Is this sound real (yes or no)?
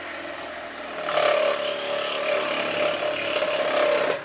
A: yes